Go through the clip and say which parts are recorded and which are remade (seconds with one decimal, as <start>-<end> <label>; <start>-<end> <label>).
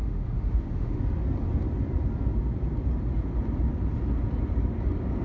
0.0-1.0 remade; 1.0-5.2 recorded